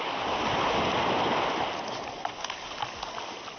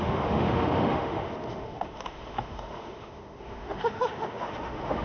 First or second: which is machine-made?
second